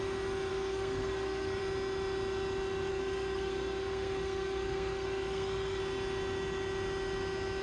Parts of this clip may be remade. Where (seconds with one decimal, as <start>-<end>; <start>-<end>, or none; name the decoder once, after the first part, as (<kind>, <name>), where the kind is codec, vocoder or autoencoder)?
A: 0.5-1.6 (codec, SNAC); 2.9-5.8